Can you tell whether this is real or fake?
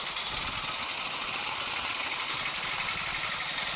real